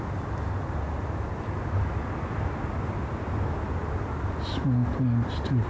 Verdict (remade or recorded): recorded